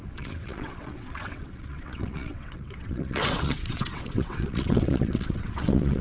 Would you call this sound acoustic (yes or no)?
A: no